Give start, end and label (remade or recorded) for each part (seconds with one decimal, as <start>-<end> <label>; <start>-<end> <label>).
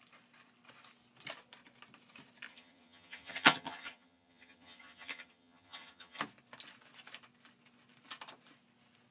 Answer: 0.0-2.5 recorded; 2.5-6.2 remade; 6.2-9.1 recorded